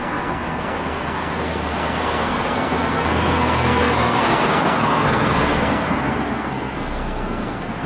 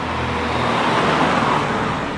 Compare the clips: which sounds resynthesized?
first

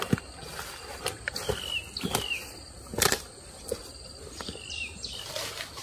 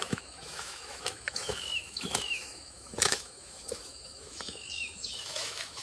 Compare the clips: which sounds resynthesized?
second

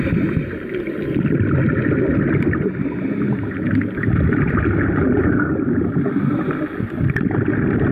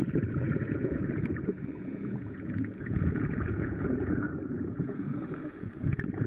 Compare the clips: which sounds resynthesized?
second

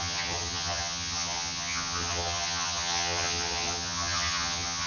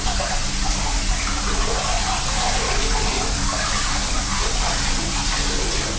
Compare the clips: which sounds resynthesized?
first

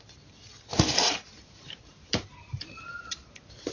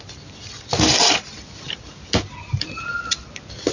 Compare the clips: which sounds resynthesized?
first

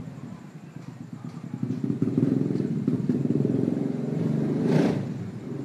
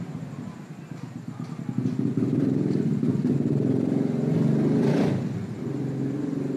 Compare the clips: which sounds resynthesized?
first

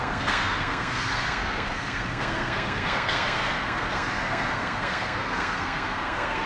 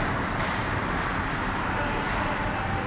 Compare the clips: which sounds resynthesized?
first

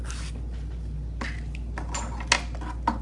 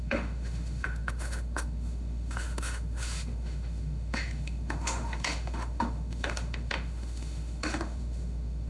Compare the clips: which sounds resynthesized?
second